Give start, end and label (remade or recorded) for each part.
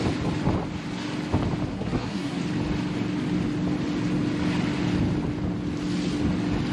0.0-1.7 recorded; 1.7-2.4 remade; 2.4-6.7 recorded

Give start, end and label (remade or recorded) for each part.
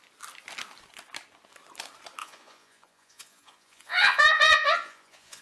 0.0-2.2 recorded; 2.2-5.4 remade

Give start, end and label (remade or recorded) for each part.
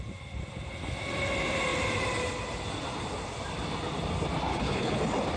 0.0-4.5 recorded; 4.5-5.0 remade; 5.0-5.4 recorded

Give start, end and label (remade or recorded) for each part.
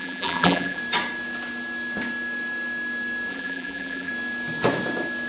0.0-0.8 remade; 0.8-3.3 recorded; 3.3-4.1 remade; 4.1-5.3 recorded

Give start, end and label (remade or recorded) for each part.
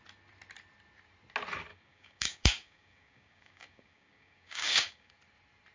0.0-1.7 recorded; 1.7-5.1 remade; 5.1-5.7 recorded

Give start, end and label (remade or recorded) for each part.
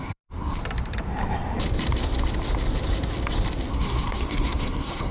0.0-0.6 remade; 0.6-3.7 recorded; 3.7-5.1 remade